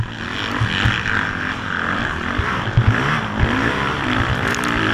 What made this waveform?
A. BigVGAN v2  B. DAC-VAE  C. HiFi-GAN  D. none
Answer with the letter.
D